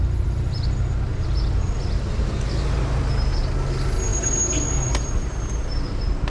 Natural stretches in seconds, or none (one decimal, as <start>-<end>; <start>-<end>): 0.0-6.3